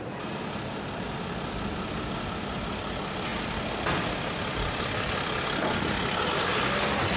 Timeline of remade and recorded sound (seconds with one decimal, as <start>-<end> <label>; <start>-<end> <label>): 0.0-7.2 recorded